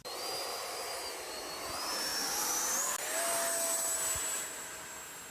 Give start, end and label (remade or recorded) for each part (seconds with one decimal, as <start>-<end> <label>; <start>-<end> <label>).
0.0-5.3 recorded